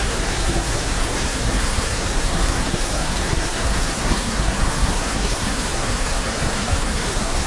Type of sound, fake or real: fake